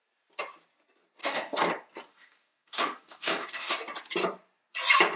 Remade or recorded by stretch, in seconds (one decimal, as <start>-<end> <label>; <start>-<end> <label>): 0.0-1.2 recorded; 1.2-1.7 remade; 1.7-2.1 recorded; 2.1-3.7 remade; 3.7-5.2 recorded